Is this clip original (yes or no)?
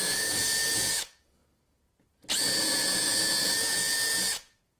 no